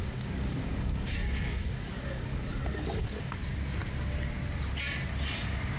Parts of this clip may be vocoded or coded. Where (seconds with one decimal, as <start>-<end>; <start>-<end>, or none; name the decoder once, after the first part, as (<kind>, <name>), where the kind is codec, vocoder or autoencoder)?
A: 0.0-3.4 (codec, DAC)